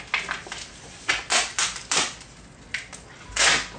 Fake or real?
real